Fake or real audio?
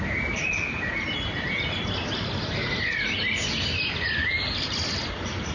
real